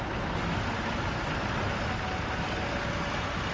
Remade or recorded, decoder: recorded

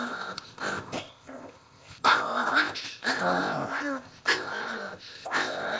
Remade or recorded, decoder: remade, codec, ZipCodec